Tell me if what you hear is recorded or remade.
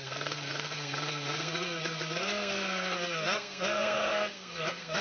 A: remade